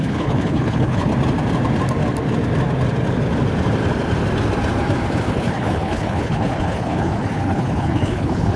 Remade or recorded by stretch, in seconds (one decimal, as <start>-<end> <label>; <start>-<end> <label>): 0.0-1.1 remade; 1.1-5.1 recorded; 5.1-8.6 remade